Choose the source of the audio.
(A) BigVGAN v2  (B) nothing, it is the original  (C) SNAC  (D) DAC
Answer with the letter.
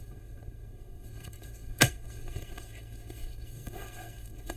C